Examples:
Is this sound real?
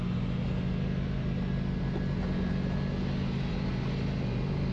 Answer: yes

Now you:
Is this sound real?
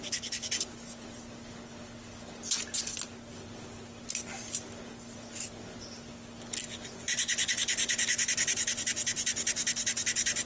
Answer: yes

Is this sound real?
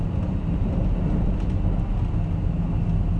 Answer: yes